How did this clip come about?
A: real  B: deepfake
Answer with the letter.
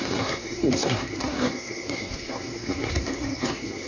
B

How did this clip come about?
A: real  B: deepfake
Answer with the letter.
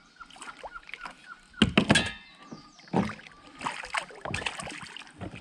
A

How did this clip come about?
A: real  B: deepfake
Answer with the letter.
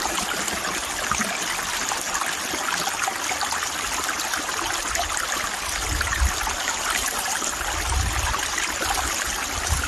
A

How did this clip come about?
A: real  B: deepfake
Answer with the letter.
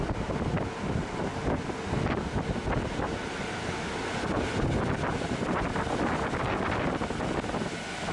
A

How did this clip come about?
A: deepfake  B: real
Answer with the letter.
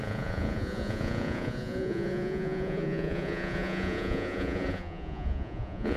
A